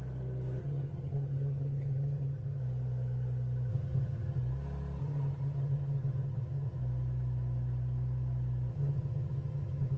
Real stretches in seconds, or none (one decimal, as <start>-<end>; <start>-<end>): 0.0-0.6; 2.6-3.7; 4.4-5.0; 6.8-8.7